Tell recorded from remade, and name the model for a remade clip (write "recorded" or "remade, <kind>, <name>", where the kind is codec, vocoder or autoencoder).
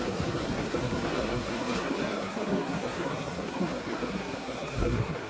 remade, codec, SNAC